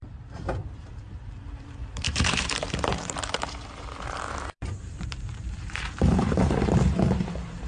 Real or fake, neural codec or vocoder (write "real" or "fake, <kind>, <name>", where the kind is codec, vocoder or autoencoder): fake, vocoder, BigVGAN v2